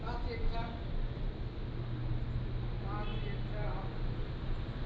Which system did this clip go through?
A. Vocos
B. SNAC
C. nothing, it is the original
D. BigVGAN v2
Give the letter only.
C